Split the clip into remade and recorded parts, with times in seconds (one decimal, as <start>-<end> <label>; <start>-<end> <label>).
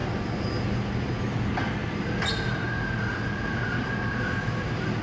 0.0-5.0 recorded